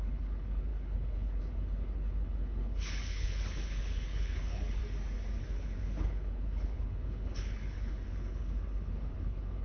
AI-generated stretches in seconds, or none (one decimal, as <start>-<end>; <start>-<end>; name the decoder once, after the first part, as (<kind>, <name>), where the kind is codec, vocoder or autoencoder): 0.0-4.8 (codec, HILCodec); 5.4-9.6